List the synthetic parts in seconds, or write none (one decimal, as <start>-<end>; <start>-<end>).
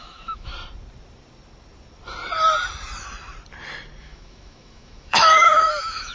0.0-0.5; 4.0-6.1